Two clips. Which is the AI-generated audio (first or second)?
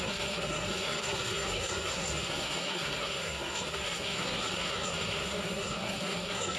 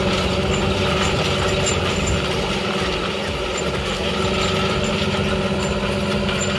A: first